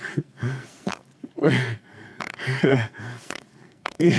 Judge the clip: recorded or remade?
remade